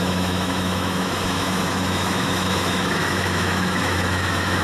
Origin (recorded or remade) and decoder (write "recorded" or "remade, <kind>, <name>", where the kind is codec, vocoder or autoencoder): remade, autoencoder, DAC-VAE